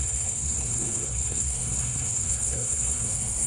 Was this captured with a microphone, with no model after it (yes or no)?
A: no